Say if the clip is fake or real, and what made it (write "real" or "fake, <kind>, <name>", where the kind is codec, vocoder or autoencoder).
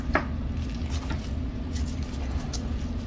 real